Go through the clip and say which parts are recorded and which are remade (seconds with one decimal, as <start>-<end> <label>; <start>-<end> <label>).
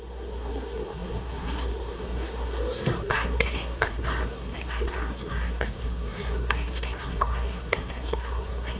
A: 0.0-8.8 remade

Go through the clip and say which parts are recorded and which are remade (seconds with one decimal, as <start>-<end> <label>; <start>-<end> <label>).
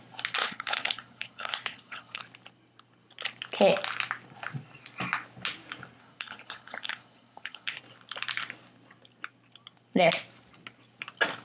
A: 0.0-0.4 recorded; 0.4-2.2 remade; 2.2-6.0 recorded; 6.0-7.8 remade; 7.8-11.4 recorded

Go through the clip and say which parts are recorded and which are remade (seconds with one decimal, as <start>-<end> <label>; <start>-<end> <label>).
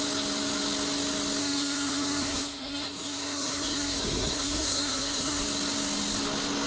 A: 0.0-1.4 recorded; 1.4-5.4 remade; 5.4-6.7 recorded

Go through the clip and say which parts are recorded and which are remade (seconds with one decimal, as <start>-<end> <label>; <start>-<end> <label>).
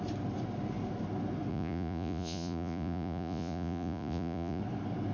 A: 0.0-1.5 recorded; 1.5-4.6 remade; 4.6-5.1 recorded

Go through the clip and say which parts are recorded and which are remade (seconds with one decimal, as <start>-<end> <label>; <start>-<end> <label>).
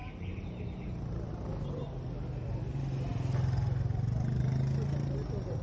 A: 0.0-0.9 remade; 0.9-5.6 recorded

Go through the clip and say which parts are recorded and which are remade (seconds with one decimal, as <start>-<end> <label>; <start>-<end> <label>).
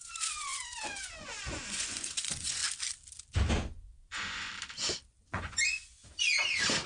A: 0.0-2.6 remade; 2.6-3.5 recorded; 3.5-4.5 remade; 4.5-5.2 recorded; 5.2-6.0 remade; 6.0-6.9 recorded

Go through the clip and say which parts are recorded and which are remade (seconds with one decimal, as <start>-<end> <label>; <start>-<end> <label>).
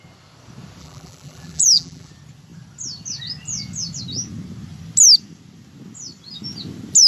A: 0.0-0.8 recorded; 0.8-2.1 remade; 2.1-7.1 recorded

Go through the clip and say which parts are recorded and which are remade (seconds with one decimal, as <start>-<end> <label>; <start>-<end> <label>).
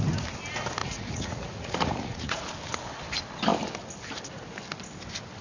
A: 0.0-0.8 recorded; 0.8-2.4 remade; 2.4-5.4 recorded